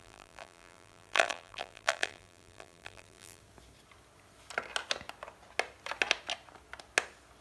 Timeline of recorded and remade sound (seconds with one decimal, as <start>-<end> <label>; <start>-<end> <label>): 0.0-3.4 remade; 3.4-7.4 recorded